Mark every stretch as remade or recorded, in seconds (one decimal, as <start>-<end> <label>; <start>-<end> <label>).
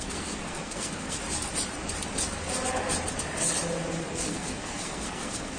0.0-1.2 remade; 1.2-4.1 recorded; 4.1-5.6 remade